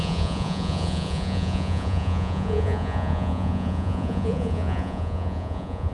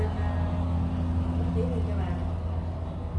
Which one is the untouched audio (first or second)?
second